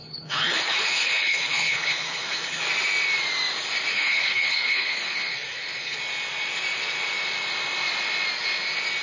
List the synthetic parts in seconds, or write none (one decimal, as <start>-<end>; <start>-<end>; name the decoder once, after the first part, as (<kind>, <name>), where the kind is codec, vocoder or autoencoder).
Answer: 0.0-2.6 (codec, HILCodec); 3.9-6.0